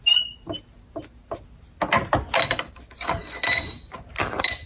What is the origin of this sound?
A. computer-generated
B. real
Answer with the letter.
B